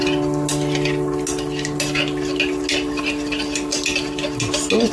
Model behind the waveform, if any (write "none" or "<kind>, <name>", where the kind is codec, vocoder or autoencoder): none